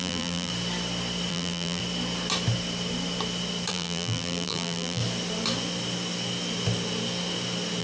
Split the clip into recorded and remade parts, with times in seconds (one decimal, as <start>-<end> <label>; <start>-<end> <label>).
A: 0.0-0.5 remade; 0.5-1.3 recorded; 1.3-1.8 remade; 1.8-3.7 recorded; 3.7-5.0 remade; 5.0-7.8 recorded